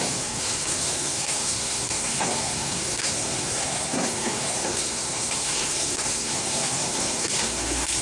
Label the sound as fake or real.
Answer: fake